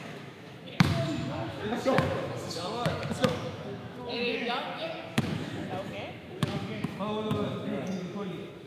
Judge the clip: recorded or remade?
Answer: remade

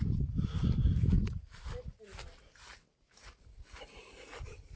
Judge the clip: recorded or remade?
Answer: recorded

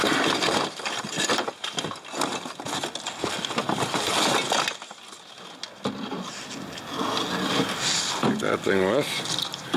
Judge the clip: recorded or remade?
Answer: recorded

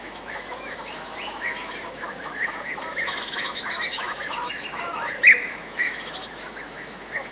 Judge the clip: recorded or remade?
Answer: remade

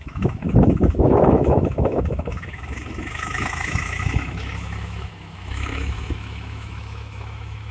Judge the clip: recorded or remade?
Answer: remade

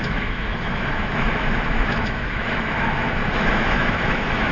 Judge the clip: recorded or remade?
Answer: remade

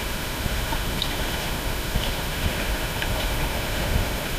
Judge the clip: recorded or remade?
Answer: remade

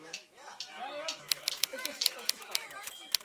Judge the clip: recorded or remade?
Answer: remade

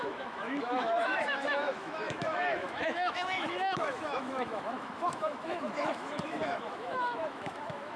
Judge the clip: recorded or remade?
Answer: remade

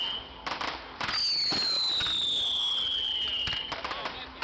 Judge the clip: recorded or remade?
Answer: recorded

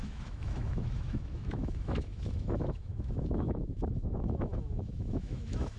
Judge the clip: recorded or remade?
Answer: remade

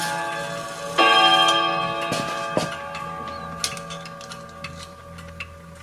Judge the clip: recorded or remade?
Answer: recorded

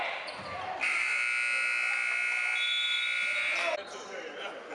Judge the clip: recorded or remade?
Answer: recorded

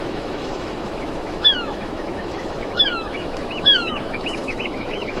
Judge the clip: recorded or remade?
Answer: remade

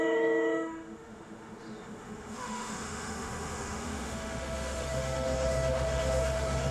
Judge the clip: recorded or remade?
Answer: remade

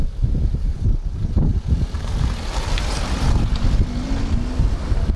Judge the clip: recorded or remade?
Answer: recorded